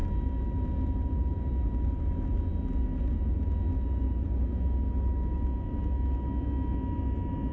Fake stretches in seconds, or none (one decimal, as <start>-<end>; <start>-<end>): none